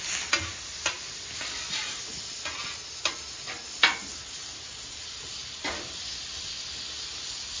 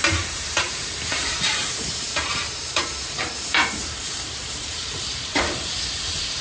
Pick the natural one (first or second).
first